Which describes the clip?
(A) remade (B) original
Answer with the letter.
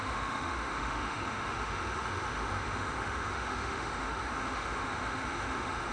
A